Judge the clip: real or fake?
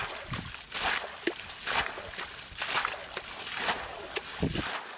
real